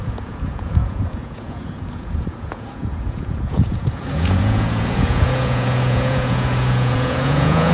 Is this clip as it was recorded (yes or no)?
no